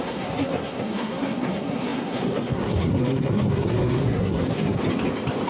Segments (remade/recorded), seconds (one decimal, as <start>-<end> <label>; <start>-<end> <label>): 0.0-4.8 remade; 4.8-5.5 recorded